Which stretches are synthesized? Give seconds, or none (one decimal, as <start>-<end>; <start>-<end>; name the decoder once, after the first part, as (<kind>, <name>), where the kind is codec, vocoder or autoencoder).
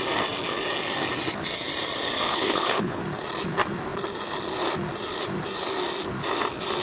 2.3-3.0 (codec, HILCodec)